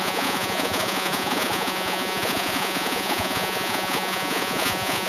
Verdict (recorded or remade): remade